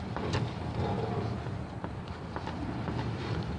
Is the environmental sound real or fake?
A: real